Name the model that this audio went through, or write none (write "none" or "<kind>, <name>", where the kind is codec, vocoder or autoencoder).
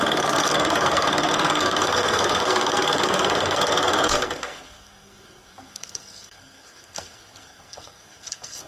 codec, SNAC